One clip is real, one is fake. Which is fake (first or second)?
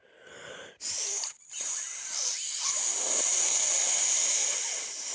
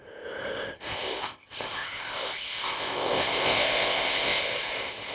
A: second